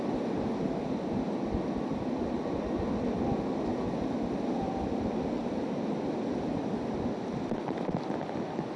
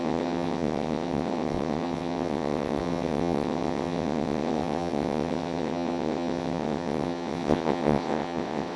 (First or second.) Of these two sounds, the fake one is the second